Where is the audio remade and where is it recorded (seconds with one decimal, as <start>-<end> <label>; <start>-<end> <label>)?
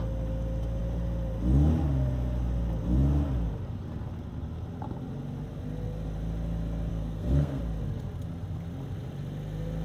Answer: 0.0-6.9 recorded; 6.9-7.6 remade; 7.6-9.8 recorded